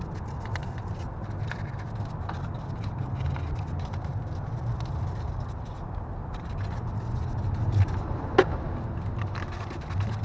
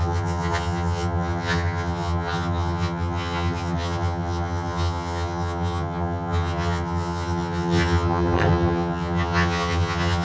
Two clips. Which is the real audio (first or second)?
first